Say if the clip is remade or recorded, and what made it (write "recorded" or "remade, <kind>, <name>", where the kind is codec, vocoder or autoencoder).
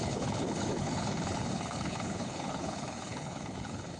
remade, codec, HILCodec